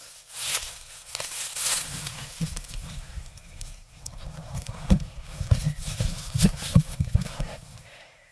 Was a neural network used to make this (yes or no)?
yes